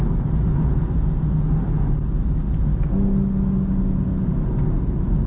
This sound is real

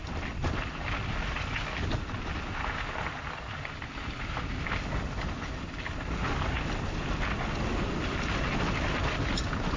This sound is real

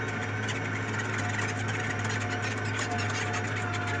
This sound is real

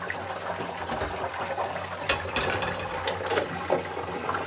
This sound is real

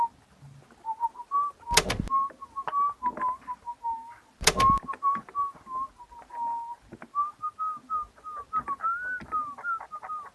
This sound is real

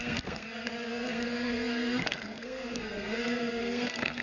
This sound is fake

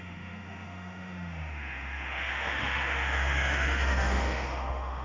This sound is fake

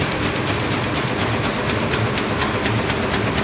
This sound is real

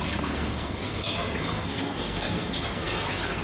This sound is fake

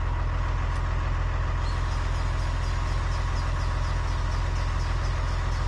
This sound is real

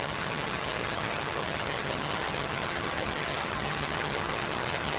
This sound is fake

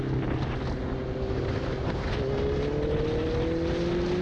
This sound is real